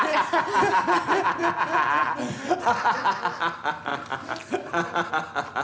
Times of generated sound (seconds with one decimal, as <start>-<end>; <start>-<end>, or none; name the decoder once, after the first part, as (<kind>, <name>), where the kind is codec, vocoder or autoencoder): none